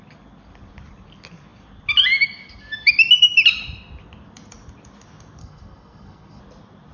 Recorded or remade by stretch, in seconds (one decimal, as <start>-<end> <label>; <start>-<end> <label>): 0.0-5.4 recorded; 5.4-6.4 remade; 6.4-6.9 recorded